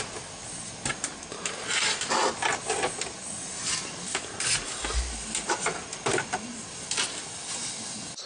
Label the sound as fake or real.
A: real